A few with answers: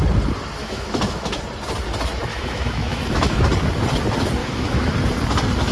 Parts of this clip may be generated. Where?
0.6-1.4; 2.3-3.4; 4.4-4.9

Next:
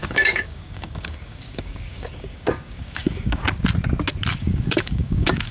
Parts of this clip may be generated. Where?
0.0-3.4; 4.4-5.5

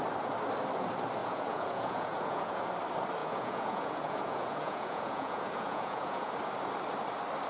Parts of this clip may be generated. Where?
1.2-2.6; 3.2-6.3

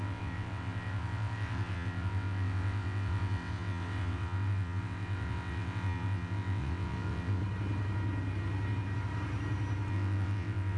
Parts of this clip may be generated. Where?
0.0-7.4; 9.9-10.8

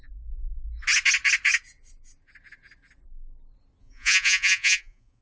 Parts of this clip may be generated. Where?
3.8-5.2

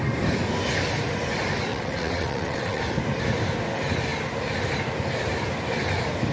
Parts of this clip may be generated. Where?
1.7-2.8

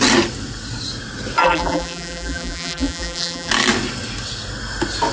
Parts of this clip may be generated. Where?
1.4-3.5

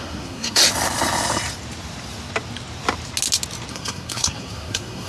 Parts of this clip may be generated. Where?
0.0-0.6; 3.7-5.1